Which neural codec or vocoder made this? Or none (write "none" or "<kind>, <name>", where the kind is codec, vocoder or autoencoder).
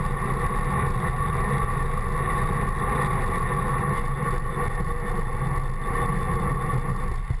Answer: none